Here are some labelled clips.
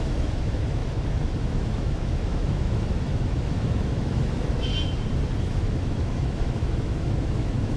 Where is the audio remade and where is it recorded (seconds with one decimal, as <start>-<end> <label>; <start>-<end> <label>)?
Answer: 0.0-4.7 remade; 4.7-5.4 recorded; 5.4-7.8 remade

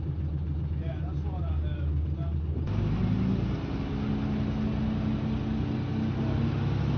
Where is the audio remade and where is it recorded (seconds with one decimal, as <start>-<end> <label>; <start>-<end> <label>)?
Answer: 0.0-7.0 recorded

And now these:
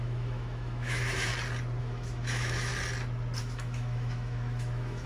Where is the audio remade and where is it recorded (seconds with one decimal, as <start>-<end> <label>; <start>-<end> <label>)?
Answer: 0.0-1.3 remade; 1.3-1.8 recorded; 1.8-2.7 remade; 2.7-3.4 recorded; 3.4-5.1 remade

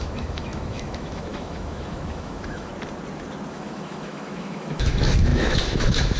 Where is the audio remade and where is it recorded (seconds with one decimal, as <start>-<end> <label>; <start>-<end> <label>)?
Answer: 0.0-2.7 remade; 2.7-3.5 recorded; 3.5-6.2 remade

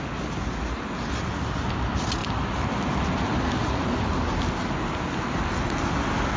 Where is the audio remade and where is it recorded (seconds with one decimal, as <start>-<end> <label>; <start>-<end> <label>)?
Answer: 0.0-6.4 recorded

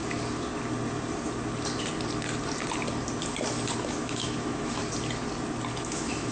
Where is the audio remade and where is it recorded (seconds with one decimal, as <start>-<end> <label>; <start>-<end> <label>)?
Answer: 0.0-3.8 recorded; 3.8-4.8 remade; 4.8-5.8 recorded; 5.8-6.3 remade

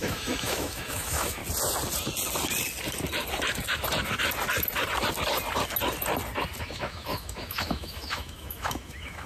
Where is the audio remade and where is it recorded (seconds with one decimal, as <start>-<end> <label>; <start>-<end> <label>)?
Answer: 0.0-1.4 remade; 1.4-6.6 recorded; 6.6-9.3 remade